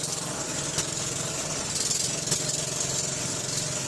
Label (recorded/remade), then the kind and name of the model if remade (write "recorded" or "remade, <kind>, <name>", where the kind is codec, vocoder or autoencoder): recorded